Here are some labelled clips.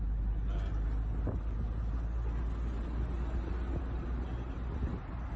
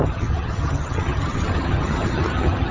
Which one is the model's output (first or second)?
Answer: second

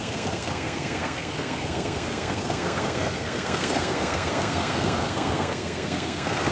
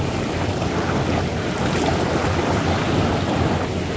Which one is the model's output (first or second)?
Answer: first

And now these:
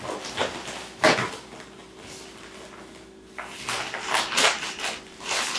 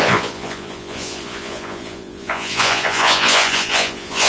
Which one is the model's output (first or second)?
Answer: second